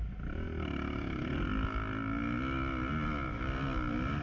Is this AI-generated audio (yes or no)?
no